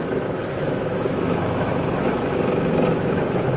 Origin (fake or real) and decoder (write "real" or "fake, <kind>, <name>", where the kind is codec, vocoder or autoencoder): fake, autoencoder, DAC-VAE